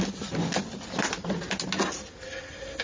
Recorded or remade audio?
recorded